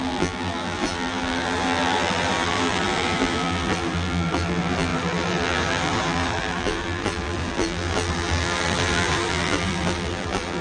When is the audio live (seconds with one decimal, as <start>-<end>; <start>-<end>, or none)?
none